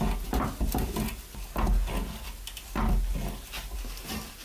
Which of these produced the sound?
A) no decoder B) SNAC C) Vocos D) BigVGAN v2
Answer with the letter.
A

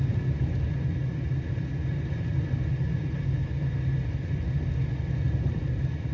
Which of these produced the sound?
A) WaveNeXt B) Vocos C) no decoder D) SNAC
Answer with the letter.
C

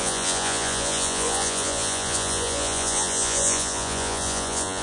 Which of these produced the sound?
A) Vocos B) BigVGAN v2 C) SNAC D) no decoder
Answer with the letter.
A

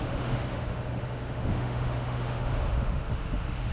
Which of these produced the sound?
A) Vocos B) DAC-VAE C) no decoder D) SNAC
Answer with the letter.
B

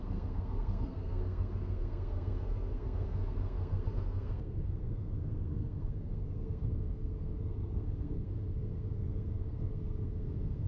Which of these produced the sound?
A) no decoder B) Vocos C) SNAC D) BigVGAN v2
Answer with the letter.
C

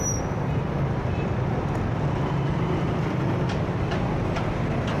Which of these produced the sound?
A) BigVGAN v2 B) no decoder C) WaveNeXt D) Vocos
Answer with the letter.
B